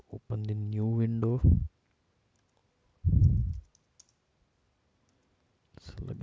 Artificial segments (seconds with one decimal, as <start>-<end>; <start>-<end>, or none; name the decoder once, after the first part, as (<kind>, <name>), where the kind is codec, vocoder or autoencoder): none